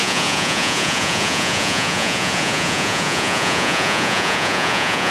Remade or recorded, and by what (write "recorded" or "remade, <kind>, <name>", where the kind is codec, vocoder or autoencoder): remade, vocoder, Vocos